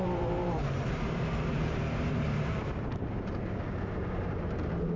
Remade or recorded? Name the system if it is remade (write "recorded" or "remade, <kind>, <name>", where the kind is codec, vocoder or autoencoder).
remade, vocoder, BigVGAN v2